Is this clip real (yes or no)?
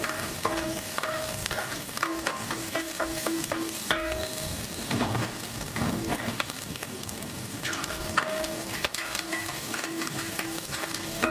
no